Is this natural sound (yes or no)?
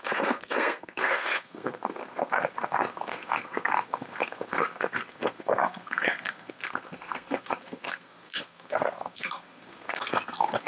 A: no